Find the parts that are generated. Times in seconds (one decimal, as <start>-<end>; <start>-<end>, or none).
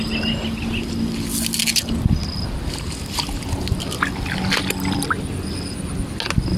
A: 0.0-2.2